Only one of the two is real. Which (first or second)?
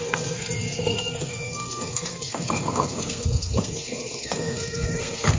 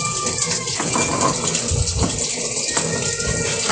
second